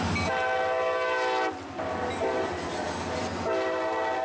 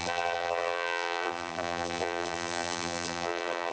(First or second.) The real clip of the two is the first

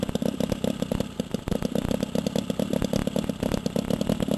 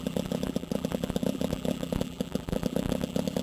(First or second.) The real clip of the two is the first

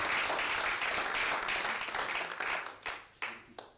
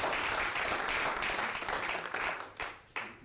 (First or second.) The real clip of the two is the first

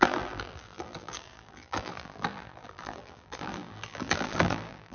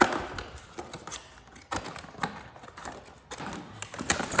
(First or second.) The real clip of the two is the second